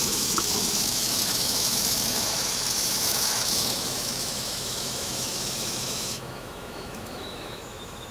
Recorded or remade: remade